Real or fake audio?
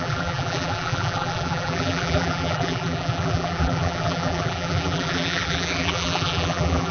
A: fake